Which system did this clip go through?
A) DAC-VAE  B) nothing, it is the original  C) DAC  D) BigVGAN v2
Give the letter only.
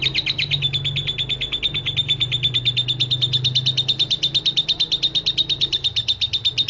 B